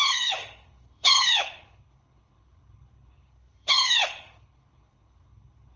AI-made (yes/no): yes